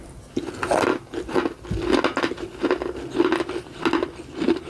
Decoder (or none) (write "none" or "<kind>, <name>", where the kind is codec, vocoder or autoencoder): none